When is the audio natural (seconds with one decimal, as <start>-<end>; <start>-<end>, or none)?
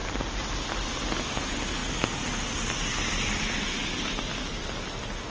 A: 1.2-5.3